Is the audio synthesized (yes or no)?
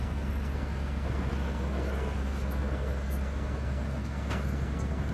yes